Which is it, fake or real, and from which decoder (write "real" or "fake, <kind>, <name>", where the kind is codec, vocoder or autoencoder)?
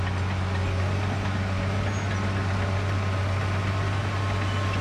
real